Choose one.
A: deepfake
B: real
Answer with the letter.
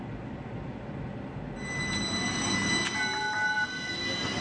B